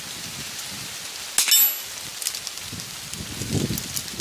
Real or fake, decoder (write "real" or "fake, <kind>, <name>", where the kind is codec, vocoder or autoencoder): real